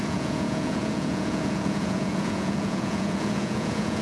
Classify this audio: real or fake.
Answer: fake